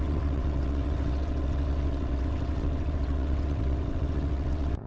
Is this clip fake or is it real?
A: fake